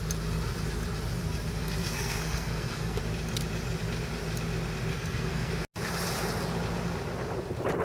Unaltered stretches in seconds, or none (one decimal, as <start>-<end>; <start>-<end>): 0.0-1.6; 3.0-4.9; 5.5-7.8